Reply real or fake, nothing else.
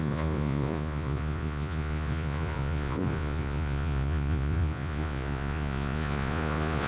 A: fake